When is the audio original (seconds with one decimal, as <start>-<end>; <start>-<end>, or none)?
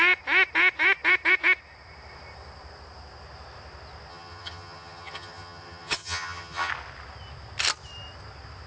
0.0-4.1; 6.7-8.7